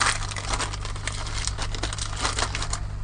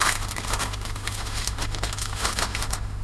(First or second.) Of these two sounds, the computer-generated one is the second